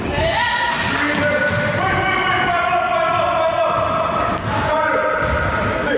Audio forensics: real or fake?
real